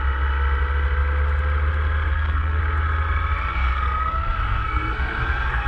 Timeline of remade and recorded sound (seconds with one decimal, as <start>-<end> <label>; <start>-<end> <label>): 0.0-2.1 recorded; 2.1-2.6 remade; 2.6-3.5 recorded; 3.5-5.7 remade